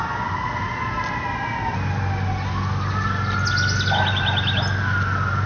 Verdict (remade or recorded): recorded